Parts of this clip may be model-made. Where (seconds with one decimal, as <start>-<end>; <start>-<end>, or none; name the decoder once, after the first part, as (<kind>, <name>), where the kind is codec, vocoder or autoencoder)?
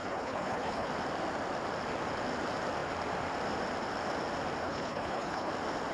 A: 0.0-0.9 (codec, HILCodec); 4.6-5.5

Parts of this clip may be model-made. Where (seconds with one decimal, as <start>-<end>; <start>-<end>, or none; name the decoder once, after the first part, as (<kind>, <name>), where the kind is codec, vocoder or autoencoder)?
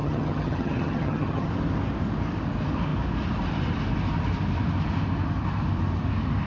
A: 0.0-1.5 (vocoder, HiFi-GAN)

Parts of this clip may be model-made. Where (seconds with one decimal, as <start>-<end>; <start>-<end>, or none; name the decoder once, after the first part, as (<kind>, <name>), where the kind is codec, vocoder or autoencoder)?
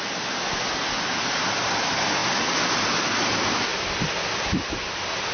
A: 0.0-2.2 (vocoder, BigVGAN v2); 3.2-5.3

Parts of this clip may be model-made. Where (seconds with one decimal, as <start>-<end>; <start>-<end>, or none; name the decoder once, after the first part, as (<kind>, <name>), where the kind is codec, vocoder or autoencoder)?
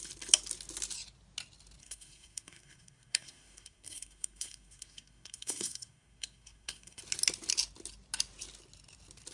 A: 1.8-7.0 (codec, SNAC)